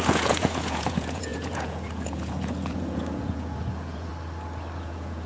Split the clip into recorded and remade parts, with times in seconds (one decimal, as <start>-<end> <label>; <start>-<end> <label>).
0.0-4.1 remade; 4.1-4.8 recorded; 4.8-5.3 remade

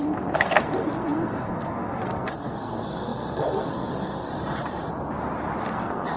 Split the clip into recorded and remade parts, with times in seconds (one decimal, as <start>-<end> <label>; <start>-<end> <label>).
0.0-4.3 remade; 4.3-5.7 recorded; 5.7-6.2 remade